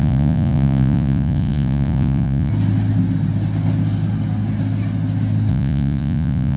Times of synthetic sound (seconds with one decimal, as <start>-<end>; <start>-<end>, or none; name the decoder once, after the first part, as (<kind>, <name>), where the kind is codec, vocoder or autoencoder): 0.0-2.5 (vocoder, Vocos); 5.5-6.6